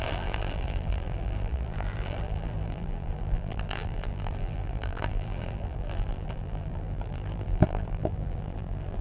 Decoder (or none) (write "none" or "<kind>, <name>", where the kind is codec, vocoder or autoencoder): vocoder, BigVGAN v2